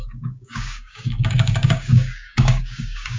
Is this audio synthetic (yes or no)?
yes